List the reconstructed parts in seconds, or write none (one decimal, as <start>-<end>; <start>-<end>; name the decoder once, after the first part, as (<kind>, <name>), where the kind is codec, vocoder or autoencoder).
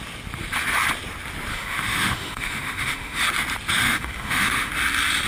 1.5-3.2 (autoencoder, DAC-VAE); 3.8-4.7